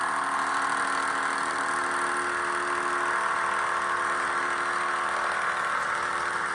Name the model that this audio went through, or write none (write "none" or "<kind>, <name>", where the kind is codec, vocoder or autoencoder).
none